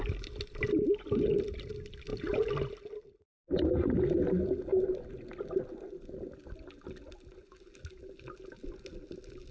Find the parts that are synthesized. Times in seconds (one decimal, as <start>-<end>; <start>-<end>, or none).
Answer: none